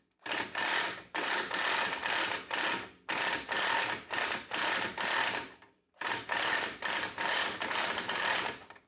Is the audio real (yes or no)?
yes